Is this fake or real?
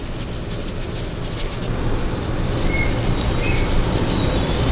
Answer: real